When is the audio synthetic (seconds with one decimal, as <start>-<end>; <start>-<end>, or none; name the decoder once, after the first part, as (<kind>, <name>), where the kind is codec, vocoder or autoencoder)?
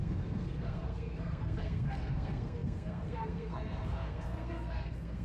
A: 0.0-5.2 (codec, SNAC)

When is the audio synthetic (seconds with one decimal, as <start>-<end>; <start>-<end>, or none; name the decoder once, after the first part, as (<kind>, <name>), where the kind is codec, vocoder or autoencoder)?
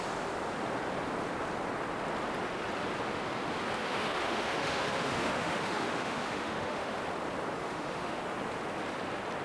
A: 3.8-7.0 (autoencoder, DAC-VAE); 7.6-8.2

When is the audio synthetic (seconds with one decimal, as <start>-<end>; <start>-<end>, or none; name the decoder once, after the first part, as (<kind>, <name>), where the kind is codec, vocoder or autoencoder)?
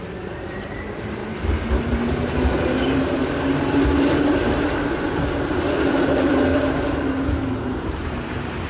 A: 0.0-1.2 (vocoder, BigVGAN v2); 1.8-6.5; 7.8-8.7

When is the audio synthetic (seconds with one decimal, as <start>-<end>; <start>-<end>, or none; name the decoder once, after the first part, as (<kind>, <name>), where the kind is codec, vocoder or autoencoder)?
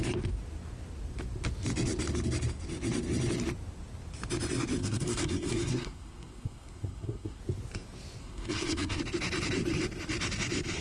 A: 4.8-7.4 (codec, SNAC); 8.2-9.0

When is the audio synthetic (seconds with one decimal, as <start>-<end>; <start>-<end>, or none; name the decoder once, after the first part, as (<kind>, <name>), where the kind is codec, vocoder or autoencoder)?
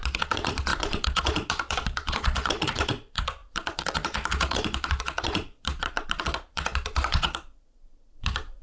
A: 0.0-8.6 (vocoder, Vocos)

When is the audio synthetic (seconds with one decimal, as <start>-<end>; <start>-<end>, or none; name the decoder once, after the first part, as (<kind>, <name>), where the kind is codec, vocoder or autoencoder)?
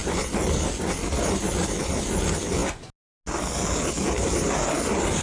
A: none